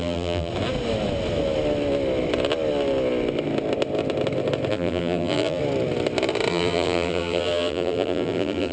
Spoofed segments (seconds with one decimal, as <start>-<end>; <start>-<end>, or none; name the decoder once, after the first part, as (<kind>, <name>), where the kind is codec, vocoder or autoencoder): 0.0-0.5 (vocoder, BigVGAN v2); 4.7-5.6; 6.5-8.7

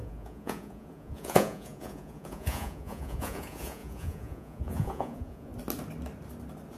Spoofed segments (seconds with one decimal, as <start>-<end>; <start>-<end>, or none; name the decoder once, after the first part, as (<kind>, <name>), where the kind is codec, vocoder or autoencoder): 0.0-5.5 (vocoder, Vocos)

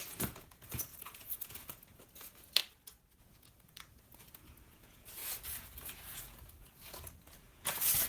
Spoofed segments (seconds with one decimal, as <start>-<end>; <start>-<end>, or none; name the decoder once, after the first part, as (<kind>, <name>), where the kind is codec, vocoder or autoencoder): 0.0-2.6 (vocoder, Vocos); 3.2-8.1

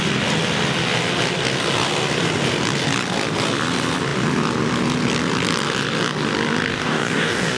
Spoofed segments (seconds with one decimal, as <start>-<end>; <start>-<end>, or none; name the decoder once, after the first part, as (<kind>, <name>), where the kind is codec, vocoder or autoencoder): 6.7-7.6 (codec, DAC)

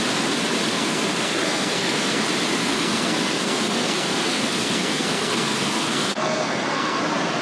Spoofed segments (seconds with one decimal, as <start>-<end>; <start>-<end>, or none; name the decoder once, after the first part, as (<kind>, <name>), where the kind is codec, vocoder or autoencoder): 0.7-2.2 (codec, SNAC); 2.6-7.0

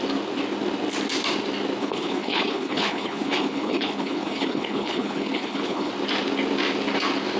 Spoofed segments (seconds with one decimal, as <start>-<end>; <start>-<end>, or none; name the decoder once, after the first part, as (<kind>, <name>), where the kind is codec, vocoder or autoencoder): 1.8-5.9 (codec, HILCodec)

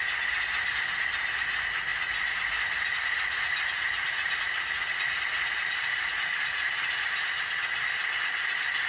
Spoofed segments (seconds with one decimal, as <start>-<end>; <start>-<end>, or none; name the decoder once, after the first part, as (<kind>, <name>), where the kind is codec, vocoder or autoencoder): none